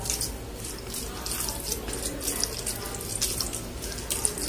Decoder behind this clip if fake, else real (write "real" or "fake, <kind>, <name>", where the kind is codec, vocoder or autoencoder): real